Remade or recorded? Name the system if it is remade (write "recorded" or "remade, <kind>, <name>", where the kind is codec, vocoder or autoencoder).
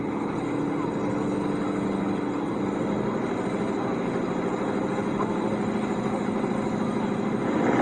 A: recorded